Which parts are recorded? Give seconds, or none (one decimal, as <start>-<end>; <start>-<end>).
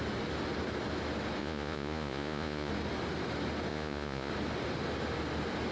0.0-1.4; 2.7-3.7; 4.3-5.7